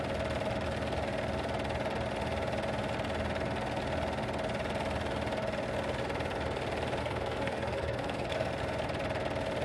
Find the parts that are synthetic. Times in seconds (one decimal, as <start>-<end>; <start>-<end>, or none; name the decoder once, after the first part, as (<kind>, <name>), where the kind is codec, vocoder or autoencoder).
7.0-8.5 (codec, SNAC)

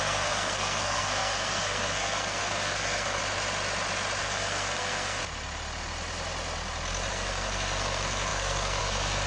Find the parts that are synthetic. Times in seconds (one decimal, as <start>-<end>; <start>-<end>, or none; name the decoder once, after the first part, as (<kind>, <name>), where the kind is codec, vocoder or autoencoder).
0.0-3.2 (codec, SNAC); 4.2-5.2; 7.1-9.3

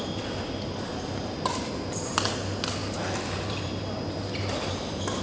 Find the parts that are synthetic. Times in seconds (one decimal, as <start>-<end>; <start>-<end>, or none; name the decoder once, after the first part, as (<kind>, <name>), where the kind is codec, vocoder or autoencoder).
none

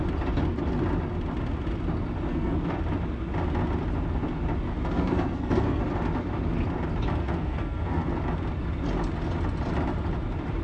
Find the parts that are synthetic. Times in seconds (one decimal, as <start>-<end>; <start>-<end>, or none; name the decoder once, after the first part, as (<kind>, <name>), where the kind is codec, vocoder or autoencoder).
2.3-2.8 (codec, SNAC); 4.7-5.8; 7.2-8.2

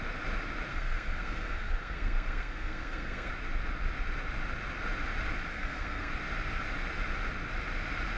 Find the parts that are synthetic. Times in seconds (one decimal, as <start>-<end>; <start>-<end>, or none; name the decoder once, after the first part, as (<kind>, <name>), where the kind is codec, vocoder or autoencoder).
0.7-3.3 (codec, SNAC); 5.5-6.1

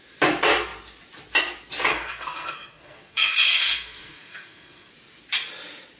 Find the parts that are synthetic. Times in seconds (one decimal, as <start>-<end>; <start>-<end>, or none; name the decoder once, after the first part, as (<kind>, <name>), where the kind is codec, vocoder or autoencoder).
1.9-4.9 (codec, SNAC)

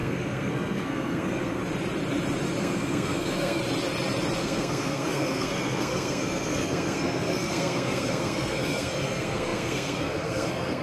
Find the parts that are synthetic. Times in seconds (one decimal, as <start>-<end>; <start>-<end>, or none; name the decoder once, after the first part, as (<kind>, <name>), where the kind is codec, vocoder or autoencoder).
0.0-1.6 (codec, SNAC); 2.6-3.6; 4.4-10.8

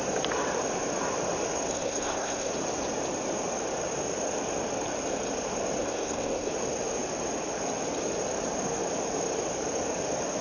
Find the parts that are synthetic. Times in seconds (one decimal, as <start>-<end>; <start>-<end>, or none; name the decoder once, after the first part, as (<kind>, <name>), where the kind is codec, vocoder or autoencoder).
1.7-2.5 (codec, SNAC); 5.8-6.5